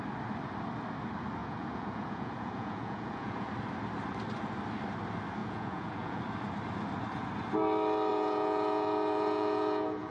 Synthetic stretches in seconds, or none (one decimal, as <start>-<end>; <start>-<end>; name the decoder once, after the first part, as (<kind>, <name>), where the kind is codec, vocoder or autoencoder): 1.4-3.5 (vocoder, Vocos); 5.4-6.2; 8.1-10.1